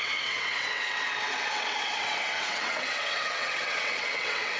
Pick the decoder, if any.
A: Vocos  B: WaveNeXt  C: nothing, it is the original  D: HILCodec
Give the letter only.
B